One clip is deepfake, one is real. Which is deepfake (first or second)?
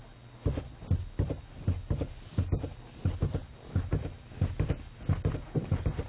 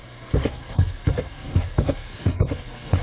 second